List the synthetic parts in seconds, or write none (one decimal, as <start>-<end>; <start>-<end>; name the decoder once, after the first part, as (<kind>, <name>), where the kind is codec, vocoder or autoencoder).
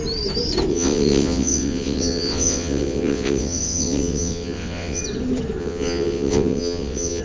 0.7-5.0 (vocoder, WaveNeXt); 5.6-7.2